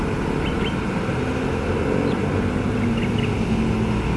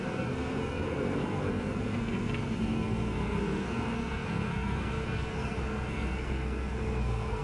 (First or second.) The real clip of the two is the first